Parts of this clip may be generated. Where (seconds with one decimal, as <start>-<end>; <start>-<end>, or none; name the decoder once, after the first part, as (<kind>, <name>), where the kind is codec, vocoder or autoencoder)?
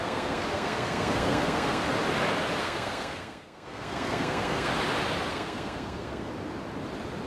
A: 0.0-1.8 (codec, SNAC); 2.6-4.7; 5.3-6.3